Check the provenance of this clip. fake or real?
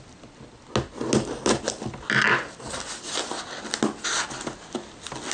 real